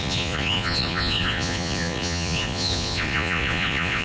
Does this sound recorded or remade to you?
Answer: remade